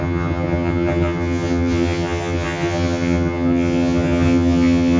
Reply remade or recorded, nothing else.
remade